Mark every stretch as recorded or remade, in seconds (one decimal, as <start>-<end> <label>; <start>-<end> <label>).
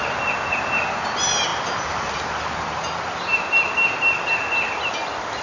0.0-5.4 recorded